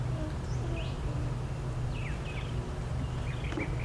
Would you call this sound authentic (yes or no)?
yes